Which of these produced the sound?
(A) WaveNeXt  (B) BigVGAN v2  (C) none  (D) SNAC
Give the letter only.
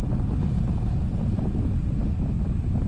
C